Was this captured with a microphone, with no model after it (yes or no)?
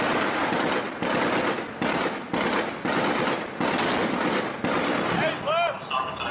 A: yes